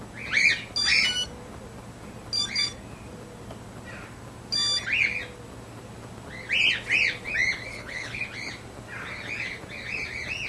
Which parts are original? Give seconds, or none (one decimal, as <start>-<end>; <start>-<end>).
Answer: 0.0-7.7; 8.2-10.5